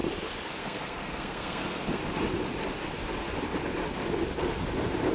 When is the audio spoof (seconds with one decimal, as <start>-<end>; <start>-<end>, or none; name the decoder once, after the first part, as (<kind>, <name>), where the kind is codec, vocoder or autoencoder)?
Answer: 0.6-2.0 (codec, SNAC)